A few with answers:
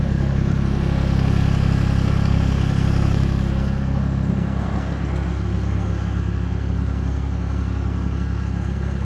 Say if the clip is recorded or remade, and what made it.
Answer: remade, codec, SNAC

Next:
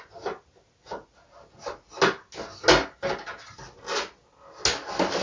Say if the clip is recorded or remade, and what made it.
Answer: recorded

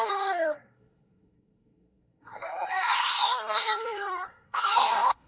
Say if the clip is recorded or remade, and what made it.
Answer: remade, codec, SNAC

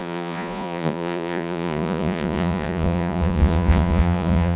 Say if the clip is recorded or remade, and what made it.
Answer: remade, vocoder, Vocos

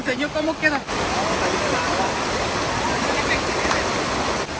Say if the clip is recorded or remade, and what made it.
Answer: recorded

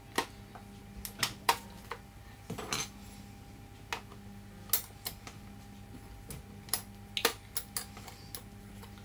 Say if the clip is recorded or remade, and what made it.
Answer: recorded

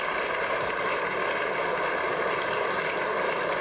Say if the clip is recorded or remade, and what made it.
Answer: recorded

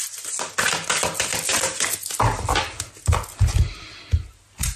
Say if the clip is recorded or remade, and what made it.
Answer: recorded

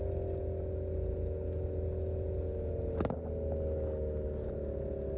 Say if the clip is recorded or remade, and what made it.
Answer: recorded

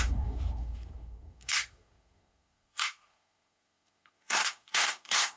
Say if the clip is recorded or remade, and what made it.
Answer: remade, codec, SNAC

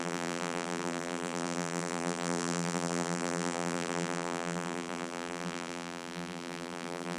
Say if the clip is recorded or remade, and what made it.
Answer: remade, vocoder, BigVGAN v2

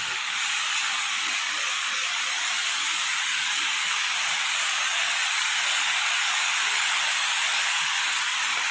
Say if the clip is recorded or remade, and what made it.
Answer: remade, codec, DAC